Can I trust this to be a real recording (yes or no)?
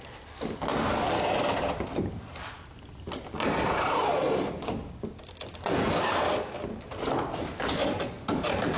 yes